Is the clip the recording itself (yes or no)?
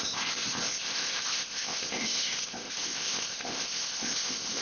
no